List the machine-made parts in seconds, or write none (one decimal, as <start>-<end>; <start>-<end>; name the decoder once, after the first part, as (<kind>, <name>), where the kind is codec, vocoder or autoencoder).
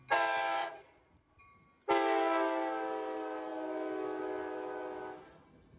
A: 0.6-1.4 (vocoder, Vocos)